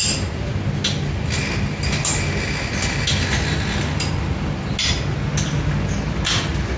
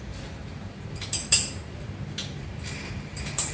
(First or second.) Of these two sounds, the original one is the first